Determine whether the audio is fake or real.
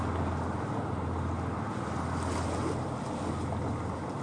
real